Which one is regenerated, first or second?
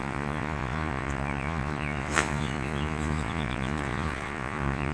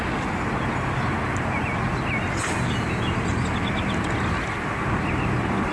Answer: first